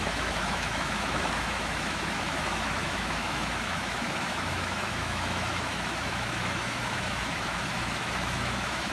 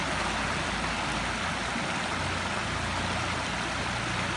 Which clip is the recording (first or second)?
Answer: second